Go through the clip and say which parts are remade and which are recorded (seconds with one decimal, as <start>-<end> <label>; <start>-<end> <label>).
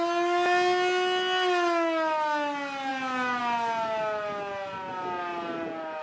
0.0-6.0 recorded